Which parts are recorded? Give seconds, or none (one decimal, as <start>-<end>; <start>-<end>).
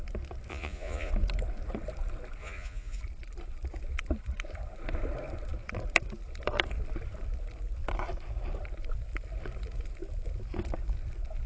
0.0-0.5; 1.1-2.4; 3.0-11.5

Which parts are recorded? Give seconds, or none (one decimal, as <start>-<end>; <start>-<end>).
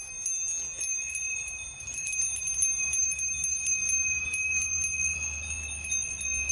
0.0-1.2; 4.9-6.5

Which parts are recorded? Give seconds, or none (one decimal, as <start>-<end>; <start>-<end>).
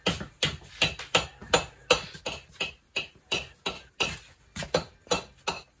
0.0-5.8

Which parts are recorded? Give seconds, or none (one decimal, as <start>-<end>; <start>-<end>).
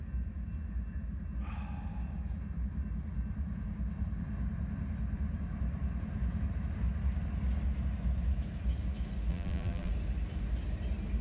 0.0-9.3; 9.9-11.2